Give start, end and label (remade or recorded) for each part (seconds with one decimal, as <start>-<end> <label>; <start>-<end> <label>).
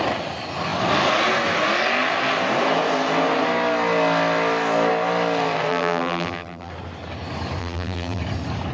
0.0-5.7 recorded; 5.7-6.7 remade; 6.7-7.6 recorded; 7.6-8.2 remade; 8.2-8.7 recorded